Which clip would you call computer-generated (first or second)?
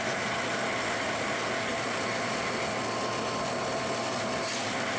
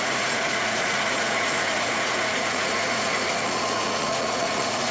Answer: second